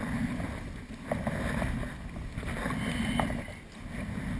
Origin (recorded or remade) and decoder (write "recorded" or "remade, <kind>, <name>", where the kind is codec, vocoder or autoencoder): recorded